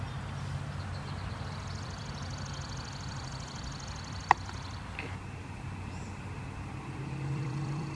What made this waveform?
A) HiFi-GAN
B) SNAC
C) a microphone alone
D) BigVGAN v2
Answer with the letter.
D